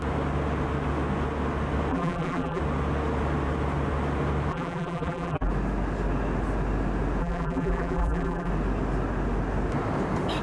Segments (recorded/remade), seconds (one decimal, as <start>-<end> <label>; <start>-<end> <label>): 0.0-1.9 recorded; 1.9-2.6 remade; 2.6-4.5 recorded; 4.5-5.5 remade; 5.5-7.2 recorded; 7.2-8.5 remade; 8.5-10.4 recorded